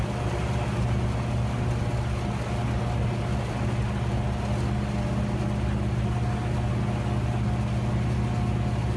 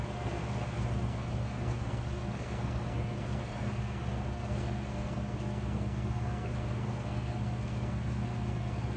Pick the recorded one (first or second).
first